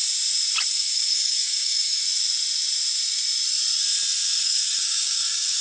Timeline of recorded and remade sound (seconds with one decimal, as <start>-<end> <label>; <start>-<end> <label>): 0.0-0.7 recorded; 0.7-2.0 remade; 2.0-4.4 recorded; 4.4-5.6 remade

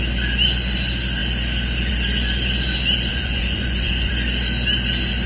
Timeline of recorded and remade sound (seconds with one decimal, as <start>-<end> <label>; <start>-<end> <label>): 0.0-3.1 recorded; 3.1-4.1 remade; 4.1-5.3 recorded

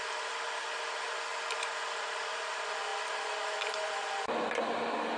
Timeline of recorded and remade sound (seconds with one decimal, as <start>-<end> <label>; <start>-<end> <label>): 0.0-5.2 recorded